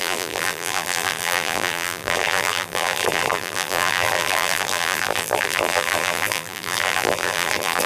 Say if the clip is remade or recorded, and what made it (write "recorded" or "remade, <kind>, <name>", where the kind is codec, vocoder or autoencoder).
remade, vocoder, BigVGAN v2